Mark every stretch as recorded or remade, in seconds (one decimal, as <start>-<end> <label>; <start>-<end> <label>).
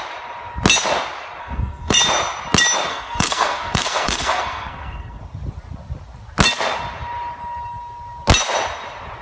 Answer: 0.0-1.4 recorded; 1.4-2.0 remade; 2.0-2.9 recorded; 2.9-5.2 remade; 5.2-9.2 recorded